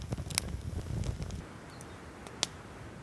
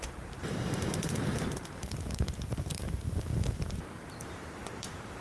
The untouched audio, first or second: first